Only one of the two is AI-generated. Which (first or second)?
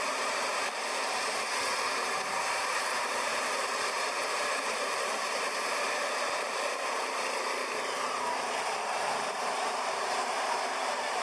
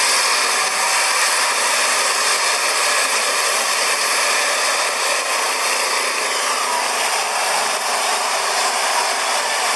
first